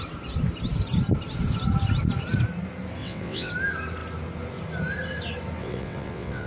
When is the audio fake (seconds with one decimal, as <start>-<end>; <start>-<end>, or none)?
3.0-3.5; 5.6-6.5

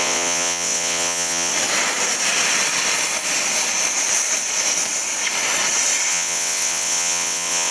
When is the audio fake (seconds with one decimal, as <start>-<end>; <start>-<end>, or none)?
0.0-1.5; 6.1-7.7

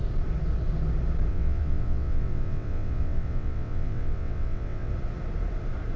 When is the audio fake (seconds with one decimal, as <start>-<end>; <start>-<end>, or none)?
1.3-4.9